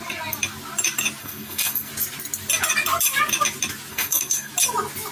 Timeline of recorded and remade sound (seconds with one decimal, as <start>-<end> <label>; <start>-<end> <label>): 0.0-1.2 recorded; 1.2-1.9 remade; 1.9-3.9 recorded; 3.9-4.5 remade; 4.5-5.1 recorded